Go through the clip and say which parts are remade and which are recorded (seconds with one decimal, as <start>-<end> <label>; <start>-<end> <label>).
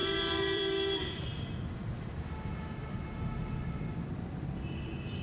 0.0-0.6 remade; 0.6-5.2 recorded